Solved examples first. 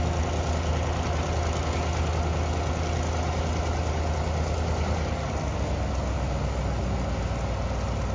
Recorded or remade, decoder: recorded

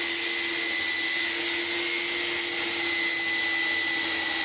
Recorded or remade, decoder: recorded